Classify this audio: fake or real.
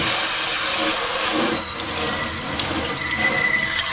real